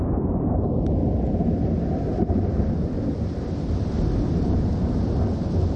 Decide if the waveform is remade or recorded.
remade